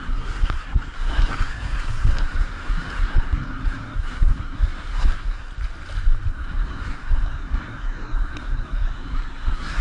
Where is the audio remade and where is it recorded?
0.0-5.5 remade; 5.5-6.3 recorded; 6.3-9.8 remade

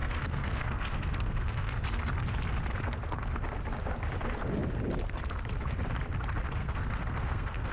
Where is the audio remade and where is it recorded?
0.0-1.7 remade; 1.7-6.6 recorded; 6.6-7.7 remade